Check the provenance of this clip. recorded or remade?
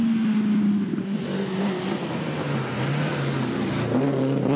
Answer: recorded